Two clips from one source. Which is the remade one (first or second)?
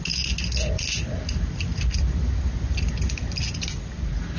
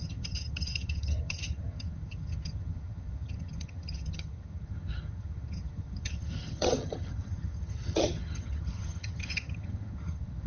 second